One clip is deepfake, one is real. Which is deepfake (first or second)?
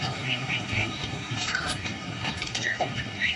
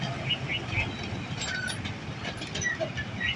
first